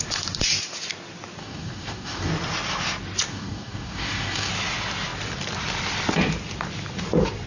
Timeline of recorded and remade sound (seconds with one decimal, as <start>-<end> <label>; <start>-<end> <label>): 0.0-1.4 recorded; 1.4-2.3 remade; 2.3-3.3 recorded; 3.3-4.5 remade; 4.5-7.5 recorded